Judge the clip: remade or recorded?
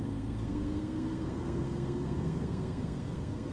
remade